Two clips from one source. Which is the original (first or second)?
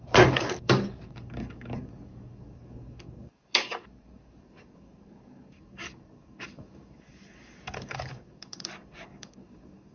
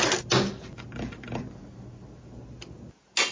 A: second